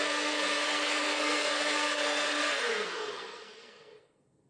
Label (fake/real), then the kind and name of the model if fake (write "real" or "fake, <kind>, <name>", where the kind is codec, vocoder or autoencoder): fake, codec, SNAC